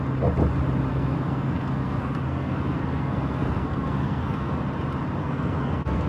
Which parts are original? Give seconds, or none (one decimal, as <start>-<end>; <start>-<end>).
0.0-0.9; 4.6-5.2